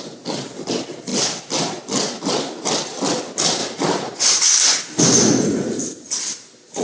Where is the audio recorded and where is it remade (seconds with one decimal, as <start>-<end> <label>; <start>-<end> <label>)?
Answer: 0.0-6.8 recorded